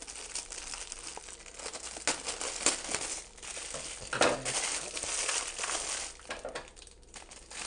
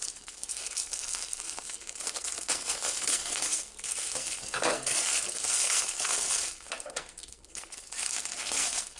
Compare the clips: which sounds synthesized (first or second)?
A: second